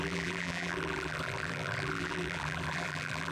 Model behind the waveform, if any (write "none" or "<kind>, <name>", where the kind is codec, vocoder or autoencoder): vocoder, BigVGAN v2